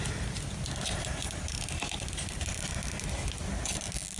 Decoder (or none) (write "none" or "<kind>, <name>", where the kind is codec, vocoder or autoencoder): none